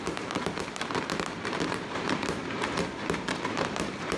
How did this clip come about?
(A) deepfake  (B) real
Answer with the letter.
A